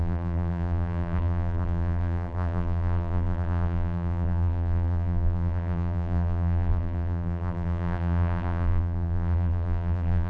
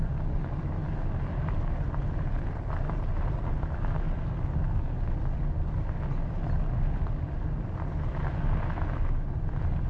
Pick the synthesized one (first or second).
first